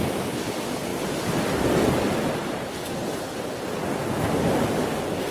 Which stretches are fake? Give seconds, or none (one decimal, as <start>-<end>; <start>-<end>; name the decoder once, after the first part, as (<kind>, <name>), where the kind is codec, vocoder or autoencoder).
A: none